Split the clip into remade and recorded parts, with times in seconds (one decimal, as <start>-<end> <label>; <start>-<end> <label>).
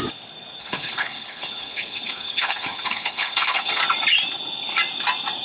0.0-0.6 recorded; 0.6-3.8 remade; 3.8-5.4 recorded